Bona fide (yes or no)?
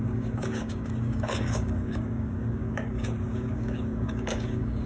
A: no